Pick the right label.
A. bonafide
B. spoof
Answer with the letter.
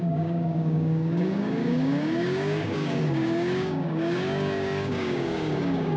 B